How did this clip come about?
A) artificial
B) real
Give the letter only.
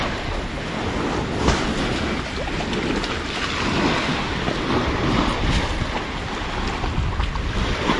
B